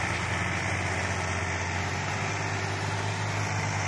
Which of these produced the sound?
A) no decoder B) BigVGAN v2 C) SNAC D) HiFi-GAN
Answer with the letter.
A